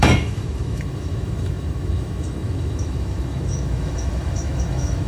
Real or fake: fake